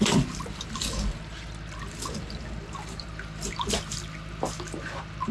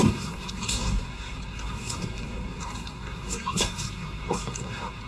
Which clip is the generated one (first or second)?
second